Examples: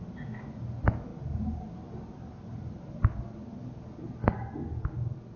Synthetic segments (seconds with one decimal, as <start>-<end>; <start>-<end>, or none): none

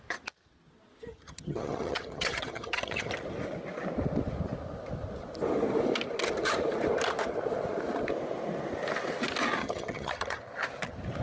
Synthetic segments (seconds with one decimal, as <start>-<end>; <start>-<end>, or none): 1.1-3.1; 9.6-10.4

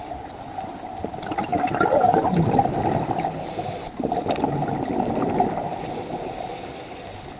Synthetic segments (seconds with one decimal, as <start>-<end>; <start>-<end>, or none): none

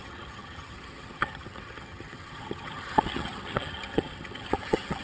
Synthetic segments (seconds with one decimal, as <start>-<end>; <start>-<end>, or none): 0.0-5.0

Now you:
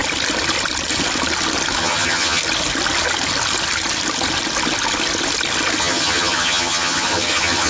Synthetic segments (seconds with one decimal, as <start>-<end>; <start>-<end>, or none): 1.8-2.4; 5.8-7.7